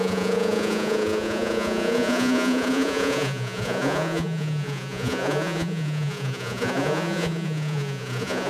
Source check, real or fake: fake